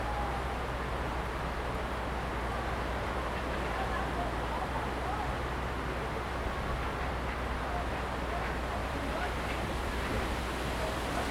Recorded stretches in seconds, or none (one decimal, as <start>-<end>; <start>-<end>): 0.0-8.8; 10.2-11.3